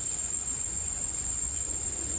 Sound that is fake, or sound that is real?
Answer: fake